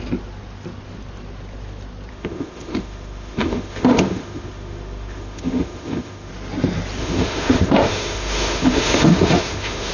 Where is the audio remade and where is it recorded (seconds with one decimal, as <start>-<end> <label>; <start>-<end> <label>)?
0.0-2.1 recorded; 2.1-6.3 remade; 6.3-7.0 recorded; 7.0-9.9 remade